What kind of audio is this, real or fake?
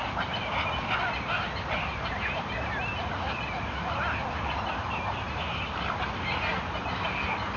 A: real